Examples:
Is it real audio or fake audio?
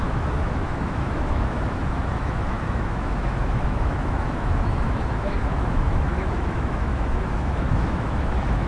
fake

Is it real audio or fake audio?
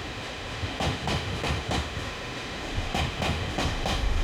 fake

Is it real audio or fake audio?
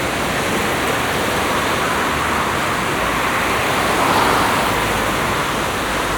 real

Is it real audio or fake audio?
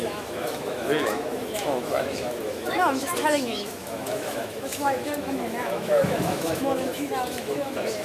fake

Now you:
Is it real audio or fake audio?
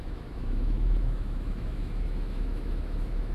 fake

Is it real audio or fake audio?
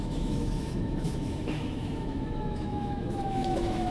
fake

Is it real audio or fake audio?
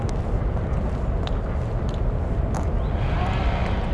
real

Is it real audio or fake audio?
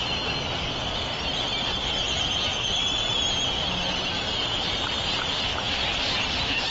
real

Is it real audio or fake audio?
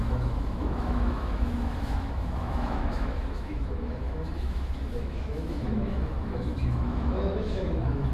fake